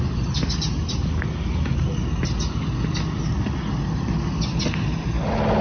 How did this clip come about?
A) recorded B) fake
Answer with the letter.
A